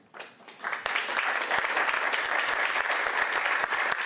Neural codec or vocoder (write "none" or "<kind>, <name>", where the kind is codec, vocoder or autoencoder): none